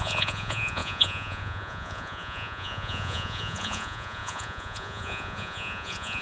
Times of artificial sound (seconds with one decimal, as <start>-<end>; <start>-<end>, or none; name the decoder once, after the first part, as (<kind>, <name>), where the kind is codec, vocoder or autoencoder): 0.0-6.2 (vocoder, Vocos)